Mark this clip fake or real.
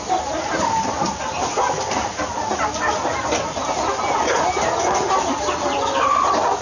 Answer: real